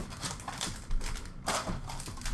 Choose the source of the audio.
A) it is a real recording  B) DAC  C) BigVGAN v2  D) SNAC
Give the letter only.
C